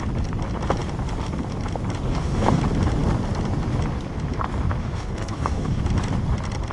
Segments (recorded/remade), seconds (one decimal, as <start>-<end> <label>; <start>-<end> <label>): 0.0-2.1 recorded; 2.1-2.6 remade; 2.6-4.8 recorded; 4.8-5.8 remade; 5.8-6.7 recorded